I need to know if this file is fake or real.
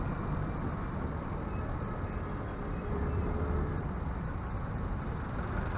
real